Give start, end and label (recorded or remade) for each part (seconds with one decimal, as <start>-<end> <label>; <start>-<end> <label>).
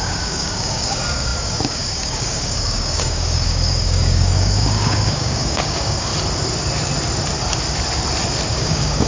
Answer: 0.0-6.1 remade; 6.1-8.5 recorded; 8.5-9.1 remade